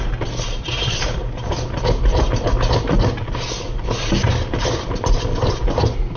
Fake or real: real